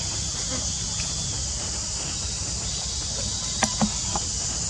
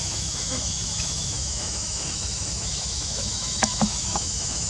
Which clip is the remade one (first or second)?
second